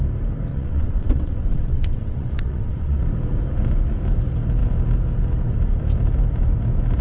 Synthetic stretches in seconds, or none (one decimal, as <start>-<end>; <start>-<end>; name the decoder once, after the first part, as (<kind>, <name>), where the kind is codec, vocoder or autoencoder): 0.5-3.0 (vocoder, WaveNeXt)